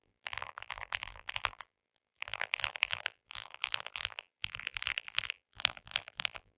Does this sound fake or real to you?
fake